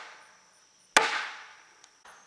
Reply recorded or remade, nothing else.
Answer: recorded